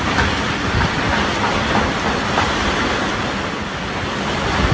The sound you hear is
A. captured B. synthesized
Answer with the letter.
A